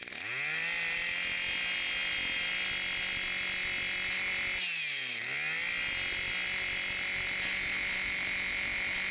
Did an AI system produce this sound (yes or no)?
no